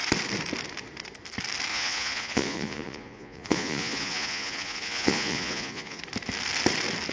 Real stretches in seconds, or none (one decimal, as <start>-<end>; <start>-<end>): 0.0-1.7; 6.0-7.1